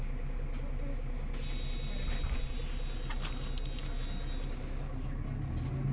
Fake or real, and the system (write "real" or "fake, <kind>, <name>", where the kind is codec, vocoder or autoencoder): real